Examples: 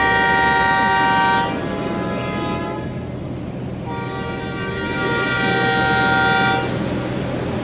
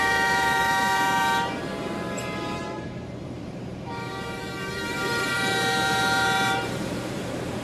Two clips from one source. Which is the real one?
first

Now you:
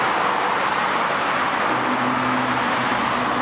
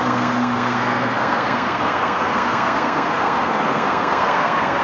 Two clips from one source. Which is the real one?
first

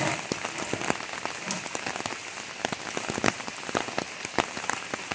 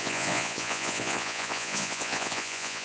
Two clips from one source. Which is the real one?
first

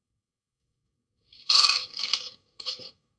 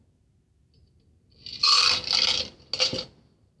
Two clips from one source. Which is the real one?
second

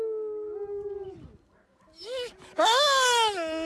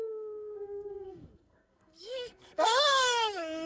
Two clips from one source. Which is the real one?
first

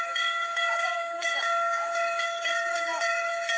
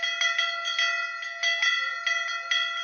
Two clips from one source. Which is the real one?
second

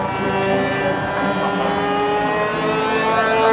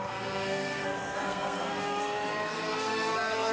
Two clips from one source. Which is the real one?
first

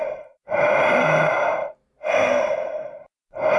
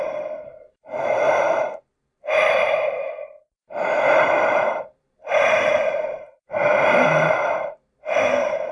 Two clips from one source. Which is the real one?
first